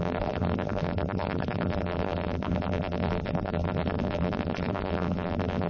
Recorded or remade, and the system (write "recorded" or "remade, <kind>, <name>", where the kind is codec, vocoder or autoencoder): remade, vocoder, BigVGAN v2